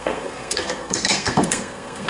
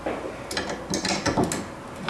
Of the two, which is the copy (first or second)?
first